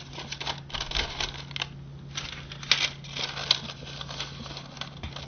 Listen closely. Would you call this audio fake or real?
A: real